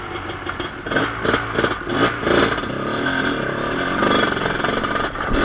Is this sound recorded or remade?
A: recorded